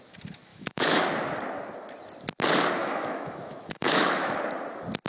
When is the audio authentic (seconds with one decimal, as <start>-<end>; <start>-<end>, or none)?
0.0-0.5; 1.0-2.8; 4.3-5.1